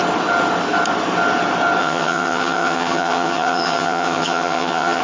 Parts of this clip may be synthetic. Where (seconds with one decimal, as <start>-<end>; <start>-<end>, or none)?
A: 1.8-5.0